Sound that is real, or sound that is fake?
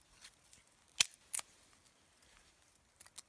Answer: real